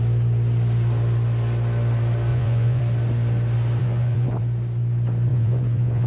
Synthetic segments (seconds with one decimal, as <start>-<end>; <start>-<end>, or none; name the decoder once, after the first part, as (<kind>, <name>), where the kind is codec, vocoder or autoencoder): 2.3-2.8 (vocoder, Vocos); 3.8-4.4; 5.3-6.1